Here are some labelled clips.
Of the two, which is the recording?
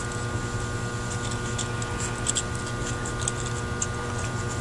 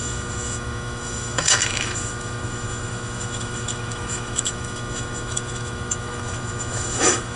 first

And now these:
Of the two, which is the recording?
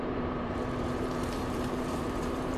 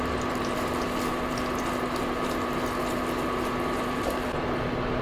second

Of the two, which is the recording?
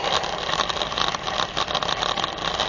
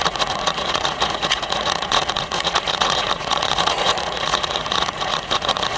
first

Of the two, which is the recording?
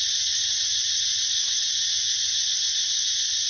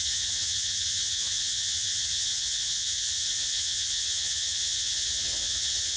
first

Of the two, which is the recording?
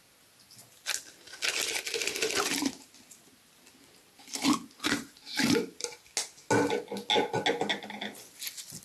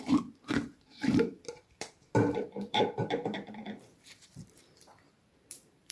first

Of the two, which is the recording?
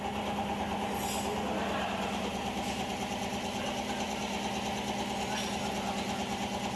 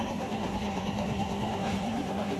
first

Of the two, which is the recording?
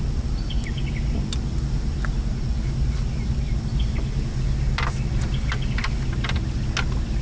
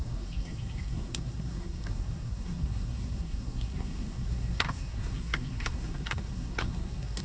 first